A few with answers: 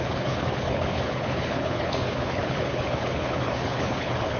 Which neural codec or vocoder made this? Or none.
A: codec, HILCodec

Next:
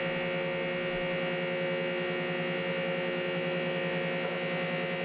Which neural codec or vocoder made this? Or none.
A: none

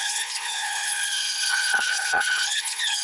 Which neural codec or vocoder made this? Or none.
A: codec, HILCodec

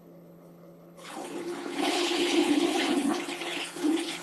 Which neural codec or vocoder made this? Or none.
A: codec, HILCodec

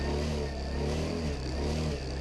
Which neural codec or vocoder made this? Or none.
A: none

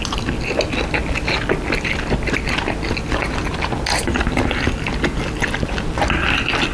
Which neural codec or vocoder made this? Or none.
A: none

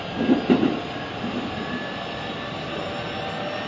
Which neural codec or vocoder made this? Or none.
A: none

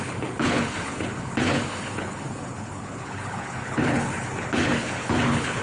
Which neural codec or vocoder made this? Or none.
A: codec, HILCodec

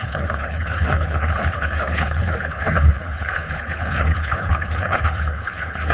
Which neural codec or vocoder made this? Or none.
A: codec, HILCodec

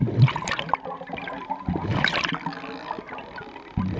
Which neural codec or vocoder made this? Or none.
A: none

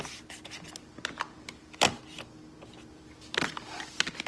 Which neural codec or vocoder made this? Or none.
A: none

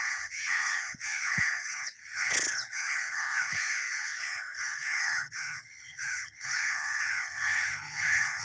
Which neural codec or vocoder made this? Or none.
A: codec, HILCodec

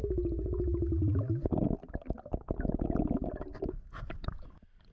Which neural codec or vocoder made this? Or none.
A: none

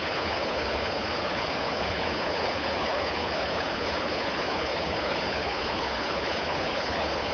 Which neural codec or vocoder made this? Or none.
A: codec, HILCodec